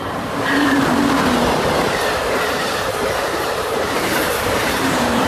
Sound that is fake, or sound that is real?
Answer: fake